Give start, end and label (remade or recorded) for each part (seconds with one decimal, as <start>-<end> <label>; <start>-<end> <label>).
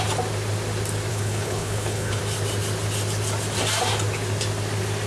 0.0-1.1 recorded; 1.1-2.2 remade; 2.2-5.1 recorded